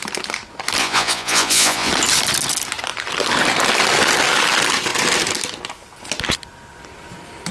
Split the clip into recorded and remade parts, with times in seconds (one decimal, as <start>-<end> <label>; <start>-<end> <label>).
0.0-0.8 recorded; 0.8-1.9 remade; 1.9-7.5 recorded